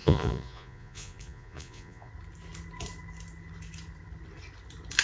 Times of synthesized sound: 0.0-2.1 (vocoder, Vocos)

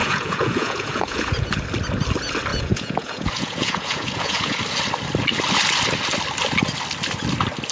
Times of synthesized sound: 0.0-1.5 (vocoder, Vocos); 2.5-4.6

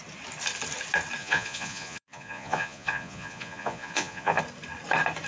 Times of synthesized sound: 1.2-4.4 (vocoder, Vocos)

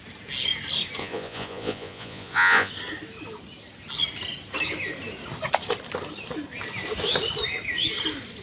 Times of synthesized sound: 1.0-2.7 (vocoder, Vocos)

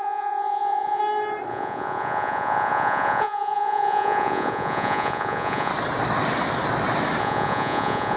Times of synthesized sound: 0.0-1.0 (vocoder, Vocos); 1.5-5.7; 7.2-8.2

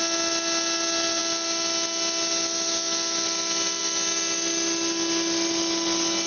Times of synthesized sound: none